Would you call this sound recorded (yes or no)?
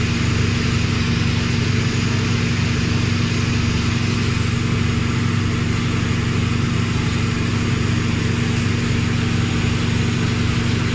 yes